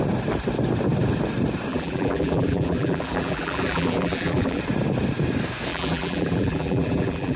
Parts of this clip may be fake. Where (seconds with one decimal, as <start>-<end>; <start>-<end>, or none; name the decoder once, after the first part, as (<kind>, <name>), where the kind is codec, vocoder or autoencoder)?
1.7-4.6 (vocoder, BigVGAN v2); 5.7-7.4